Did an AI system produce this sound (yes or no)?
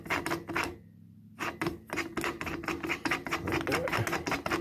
no